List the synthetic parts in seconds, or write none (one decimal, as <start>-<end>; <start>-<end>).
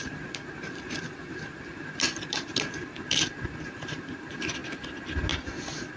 0.0-4.6; 5.3-6.0